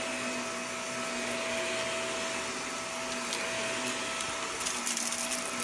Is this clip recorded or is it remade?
recorded